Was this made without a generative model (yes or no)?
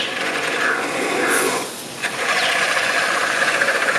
no